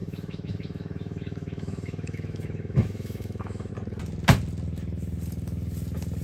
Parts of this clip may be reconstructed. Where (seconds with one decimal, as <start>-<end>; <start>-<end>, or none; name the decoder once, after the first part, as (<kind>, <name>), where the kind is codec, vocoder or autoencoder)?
0.0-3.7 (autoencoder, DAC-VAE)